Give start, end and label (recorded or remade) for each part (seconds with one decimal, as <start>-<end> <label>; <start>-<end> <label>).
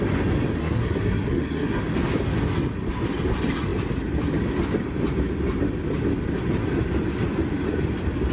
0.0-0.6 recorded; 0.6-1.8 remade; 1.8-8.3 recorded